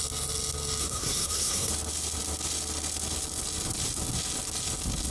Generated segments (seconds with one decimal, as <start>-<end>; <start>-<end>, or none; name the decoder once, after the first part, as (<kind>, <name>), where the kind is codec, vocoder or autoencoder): 0.8-1.7 (codec, SNAC)